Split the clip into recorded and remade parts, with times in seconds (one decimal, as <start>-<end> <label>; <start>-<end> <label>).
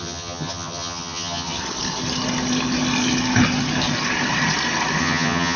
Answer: 0.0-1.6 remade; 1.6-5.0 recorded; 5.0-5.6 remade